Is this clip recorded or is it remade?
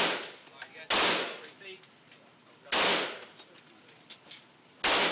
recorded